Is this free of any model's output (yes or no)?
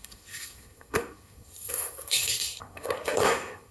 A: no